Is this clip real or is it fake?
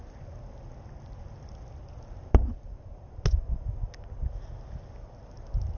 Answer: real